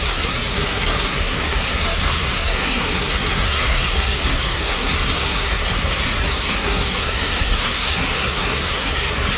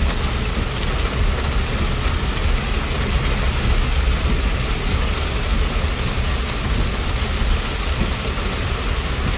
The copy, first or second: first